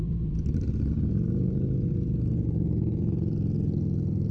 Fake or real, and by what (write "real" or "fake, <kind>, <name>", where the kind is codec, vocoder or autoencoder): real